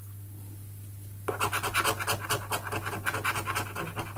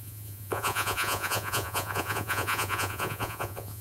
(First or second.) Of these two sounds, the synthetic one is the second